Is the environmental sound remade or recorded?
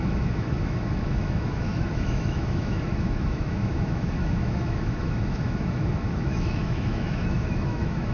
remade